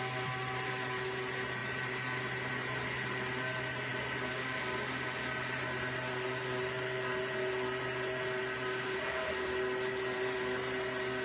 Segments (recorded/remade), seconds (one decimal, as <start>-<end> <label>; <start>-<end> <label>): 0.0-11.2 recorded